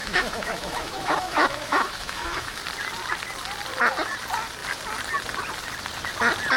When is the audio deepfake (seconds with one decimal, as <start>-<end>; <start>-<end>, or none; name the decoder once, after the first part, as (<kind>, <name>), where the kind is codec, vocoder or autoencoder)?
0.0-2.6 (autoencoder, DAC-VAE)